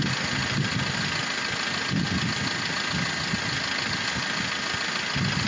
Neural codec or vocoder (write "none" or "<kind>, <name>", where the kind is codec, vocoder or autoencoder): none